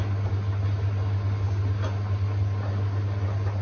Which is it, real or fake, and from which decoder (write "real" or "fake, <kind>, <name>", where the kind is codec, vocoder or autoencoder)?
real